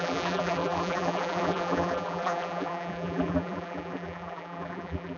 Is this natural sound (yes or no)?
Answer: no